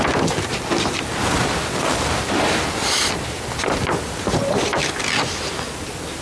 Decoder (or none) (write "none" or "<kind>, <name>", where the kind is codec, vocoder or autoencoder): none